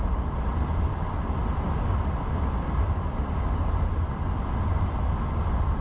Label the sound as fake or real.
real